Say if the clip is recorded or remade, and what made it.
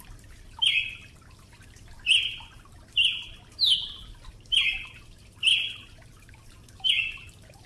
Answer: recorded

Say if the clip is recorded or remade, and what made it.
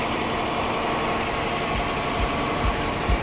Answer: recorded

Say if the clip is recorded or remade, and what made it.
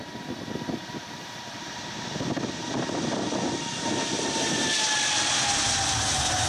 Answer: recorded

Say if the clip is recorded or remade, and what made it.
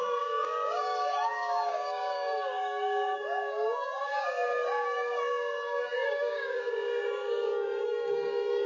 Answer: remade, codec, DAC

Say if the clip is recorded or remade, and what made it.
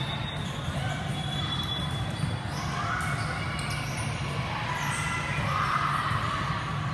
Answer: recorded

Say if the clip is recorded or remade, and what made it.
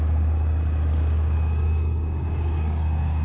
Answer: remade, codec, DAC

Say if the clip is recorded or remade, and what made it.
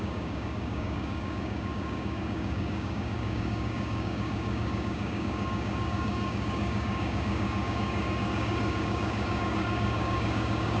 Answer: remade, codec, DAC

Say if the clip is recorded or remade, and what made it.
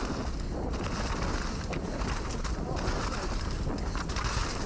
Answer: recorded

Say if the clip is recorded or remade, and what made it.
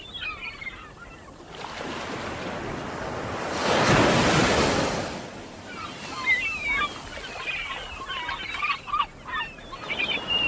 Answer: recorded